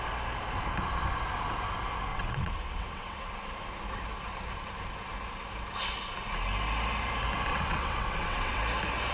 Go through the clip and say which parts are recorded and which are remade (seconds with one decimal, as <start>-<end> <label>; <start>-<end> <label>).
0.0-2.1 recorded; 2.1-3.3 remade; 3.3-7.5 recorded; 7.5-8.6 remade; 8.6-9.1 recorded